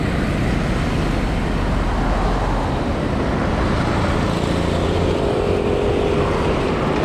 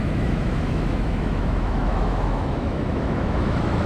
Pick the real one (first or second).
first